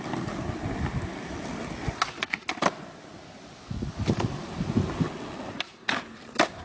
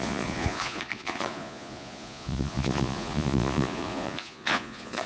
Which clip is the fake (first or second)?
second